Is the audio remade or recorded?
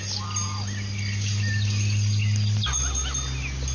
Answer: recorded